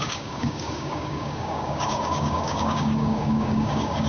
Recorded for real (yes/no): no